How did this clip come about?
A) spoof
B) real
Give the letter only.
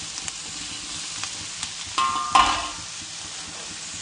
B